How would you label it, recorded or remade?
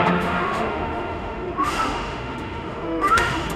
remade